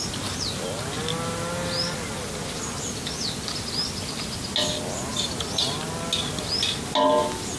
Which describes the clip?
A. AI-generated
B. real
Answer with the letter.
B